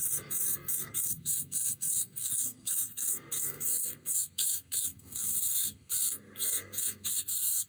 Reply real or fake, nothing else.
fake